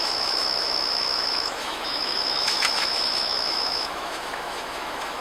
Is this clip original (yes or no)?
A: no